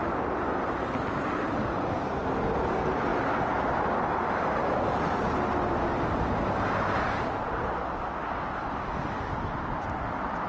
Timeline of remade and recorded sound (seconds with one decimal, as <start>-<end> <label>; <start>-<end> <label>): 0.0-10.5 recorded